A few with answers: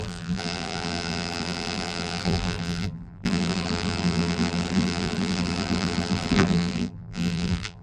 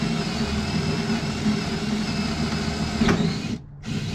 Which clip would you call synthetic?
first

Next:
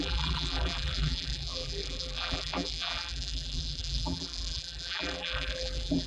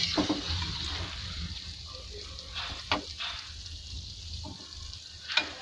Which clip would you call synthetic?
first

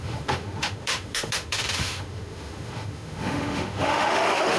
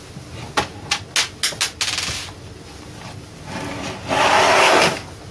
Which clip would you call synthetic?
first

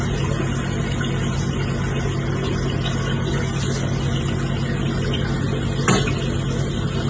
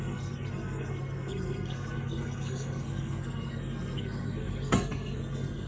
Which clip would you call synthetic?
second